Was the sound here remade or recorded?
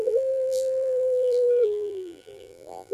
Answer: remade